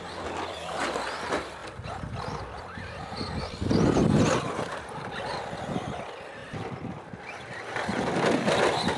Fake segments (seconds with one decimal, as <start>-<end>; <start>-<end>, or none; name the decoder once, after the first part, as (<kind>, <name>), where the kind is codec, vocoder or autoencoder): none